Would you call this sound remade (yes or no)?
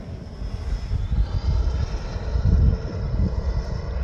no